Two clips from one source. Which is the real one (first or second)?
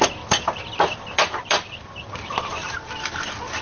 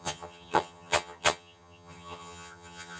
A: first